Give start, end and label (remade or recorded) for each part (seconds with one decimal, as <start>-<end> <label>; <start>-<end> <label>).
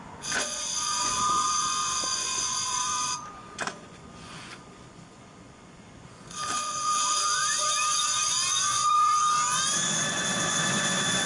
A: 0.0-11.3 remade